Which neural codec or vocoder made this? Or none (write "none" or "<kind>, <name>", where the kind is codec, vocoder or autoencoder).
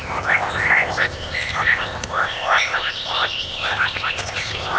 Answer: codec, ZipCodec